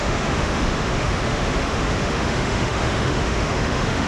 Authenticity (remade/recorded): remade